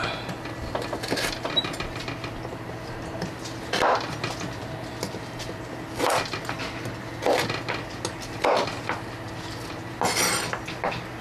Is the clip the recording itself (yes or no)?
yes